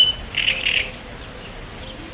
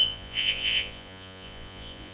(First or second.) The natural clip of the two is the first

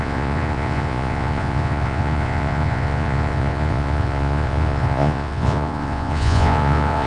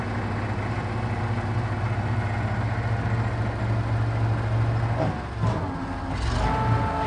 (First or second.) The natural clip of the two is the second